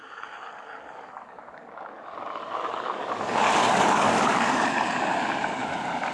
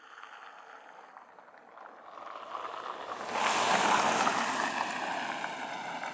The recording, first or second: second